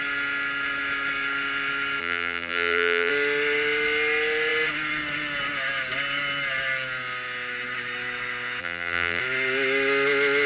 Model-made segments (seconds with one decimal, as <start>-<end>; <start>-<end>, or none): 2.0-3.1; 8.6-9.2